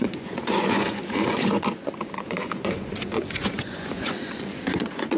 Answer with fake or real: fake